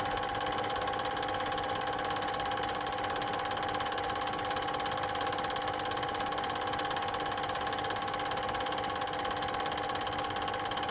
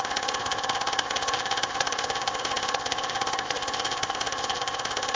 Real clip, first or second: first